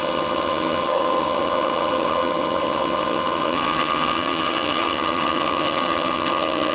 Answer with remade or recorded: remade